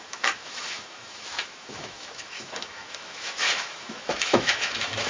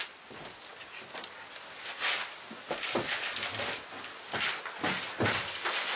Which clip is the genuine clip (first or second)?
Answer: second